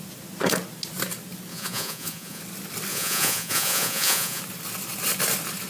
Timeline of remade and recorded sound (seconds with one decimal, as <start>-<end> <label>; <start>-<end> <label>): 0.0-1.5 recorded; 1.5-2.4 remade; 2.4-2.9 recorded; 2.9-4.4 remade; 4.4-5.7 recorded

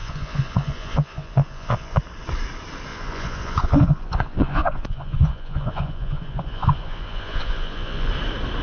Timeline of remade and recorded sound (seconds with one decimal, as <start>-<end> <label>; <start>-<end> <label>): 0.0-2.0 remade; 2.0-2.9 recorded; 2.9-8.1 remade; 8.1-8.6 recorded

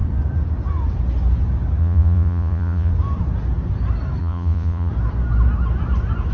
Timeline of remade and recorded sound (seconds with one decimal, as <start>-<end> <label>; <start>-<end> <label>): 0.0-1.8 recorded; 1.8-2.9 remade; 2.9-4.2 recorded; 4.2-4.9 remade; 4.9-6.3 recorded

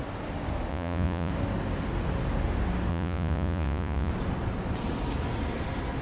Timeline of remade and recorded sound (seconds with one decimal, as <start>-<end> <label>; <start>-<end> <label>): 0.0-0.7 recorded; 0.7-1.3 remade; 1.3-2.9 recorded; 2.9-4.1 remade; 4.1-6.0 recorded

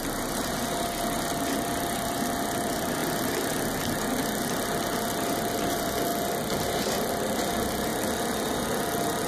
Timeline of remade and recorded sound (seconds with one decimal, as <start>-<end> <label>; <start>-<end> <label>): 0.0-9.3 recorded

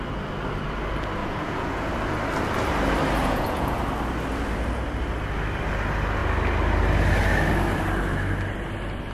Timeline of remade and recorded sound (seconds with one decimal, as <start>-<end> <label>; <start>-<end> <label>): 0.0-1.2 recorded; 1.2-1.9 remade; 1.9-3.2 recorded; 3.2-3.8 remade; 3.8-9.1 recorded

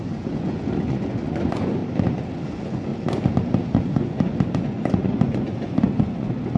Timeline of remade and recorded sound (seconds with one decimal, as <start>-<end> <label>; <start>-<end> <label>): 0.0-1.8 remade; 1.8-2.4 recorded; 2.4-2.9 remade; 2.9-3.6 recorded; 3.6-6.6 remade

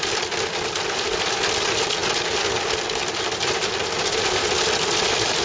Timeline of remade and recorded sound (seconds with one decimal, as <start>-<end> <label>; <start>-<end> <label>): 0.0-5.4 recorded